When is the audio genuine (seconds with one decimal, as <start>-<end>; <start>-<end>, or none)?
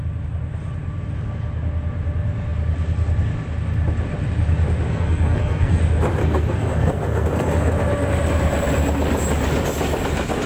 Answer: 0.0-4.9; 5.8-6.2; 7.7-10.5